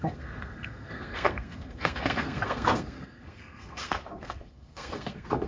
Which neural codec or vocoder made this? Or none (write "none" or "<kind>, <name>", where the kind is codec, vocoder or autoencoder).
codec, SNAC